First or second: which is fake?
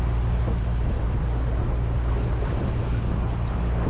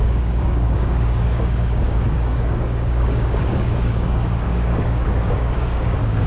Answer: second